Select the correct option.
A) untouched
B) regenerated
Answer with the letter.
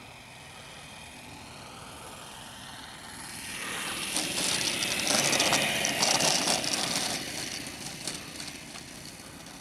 A